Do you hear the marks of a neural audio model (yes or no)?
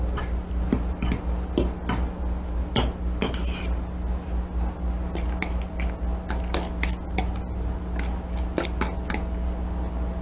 no